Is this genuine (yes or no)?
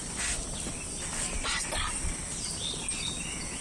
yes